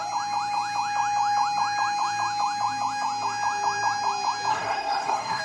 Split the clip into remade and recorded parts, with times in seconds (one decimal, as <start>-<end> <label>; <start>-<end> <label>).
0.0-4.5 recorded; 4.5-5.4 remade